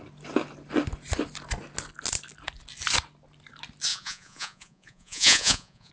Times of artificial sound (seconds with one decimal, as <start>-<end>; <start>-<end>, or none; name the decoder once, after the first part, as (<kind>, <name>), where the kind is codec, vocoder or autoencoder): 3.9-5.9 (vocoder, Vocos)